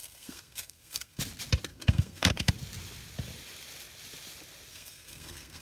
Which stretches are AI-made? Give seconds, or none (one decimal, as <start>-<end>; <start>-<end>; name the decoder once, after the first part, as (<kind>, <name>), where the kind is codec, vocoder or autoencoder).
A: 0.0-1.2 (codec, SNAC); 1.7-2.5; 4.7-5.6